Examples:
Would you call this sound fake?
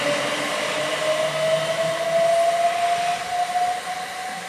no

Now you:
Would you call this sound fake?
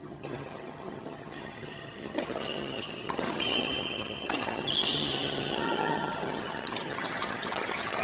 yes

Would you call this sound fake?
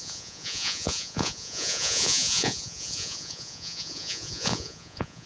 yes